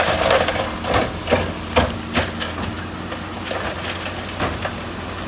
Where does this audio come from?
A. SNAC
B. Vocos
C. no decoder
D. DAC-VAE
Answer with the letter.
C